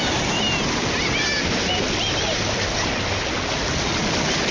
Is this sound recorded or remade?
recorded